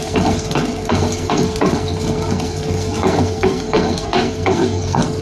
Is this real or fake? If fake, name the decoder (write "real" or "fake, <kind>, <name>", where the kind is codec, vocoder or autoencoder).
fake, codec, SNAC